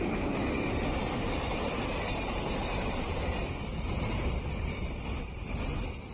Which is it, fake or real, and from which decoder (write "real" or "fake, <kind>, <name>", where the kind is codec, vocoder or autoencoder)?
fake, vocoder, BigVGAN v2